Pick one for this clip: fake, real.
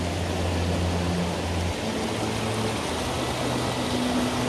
real